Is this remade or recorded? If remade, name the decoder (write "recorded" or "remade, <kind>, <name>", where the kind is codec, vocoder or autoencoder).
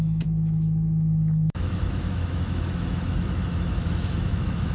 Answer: remade, autoencoder, DAC-VAE